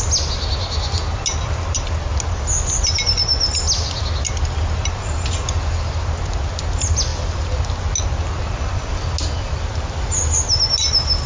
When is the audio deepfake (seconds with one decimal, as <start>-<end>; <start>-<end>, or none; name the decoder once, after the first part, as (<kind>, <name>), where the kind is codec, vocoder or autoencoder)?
none